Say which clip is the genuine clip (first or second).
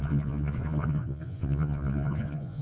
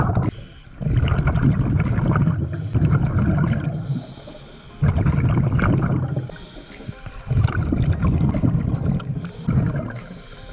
second